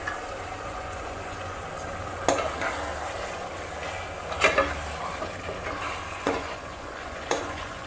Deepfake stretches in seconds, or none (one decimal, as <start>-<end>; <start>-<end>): 0.5-1.6; 6.1-7.9